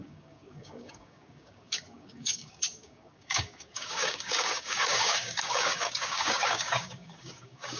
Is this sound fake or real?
fake